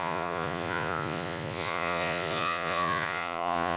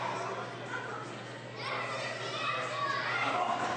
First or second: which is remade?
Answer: first